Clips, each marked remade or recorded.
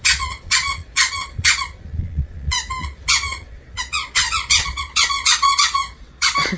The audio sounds remade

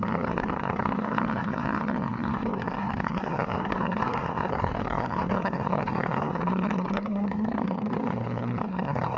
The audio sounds remade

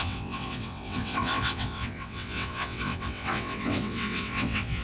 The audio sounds remade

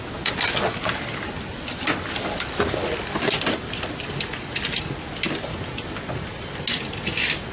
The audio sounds recorded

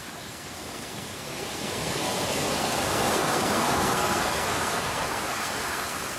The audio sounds remade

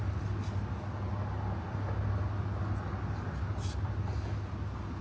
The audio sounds recorded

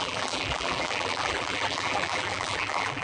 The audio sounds remade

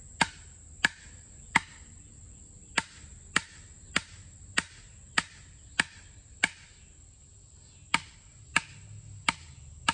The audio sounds recorded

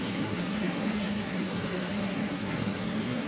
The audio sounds remade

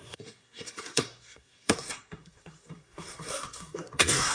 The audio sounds remade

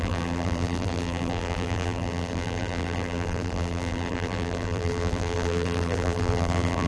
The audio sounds remade